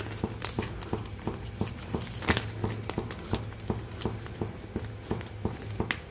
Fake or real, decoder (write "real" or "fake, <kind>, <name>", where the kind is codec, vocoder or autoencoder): real